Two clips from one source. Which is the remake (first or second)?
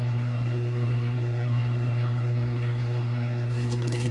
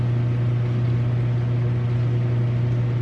first